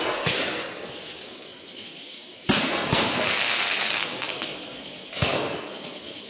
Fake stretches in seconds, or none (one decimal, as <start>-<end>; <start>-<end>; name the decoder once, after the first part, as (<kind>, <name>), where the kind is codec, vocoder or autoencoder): 0.0-6.3 (codec, SNAC)